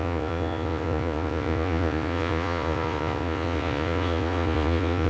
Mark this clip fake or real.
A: fake